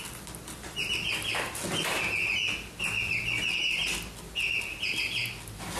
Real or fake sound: real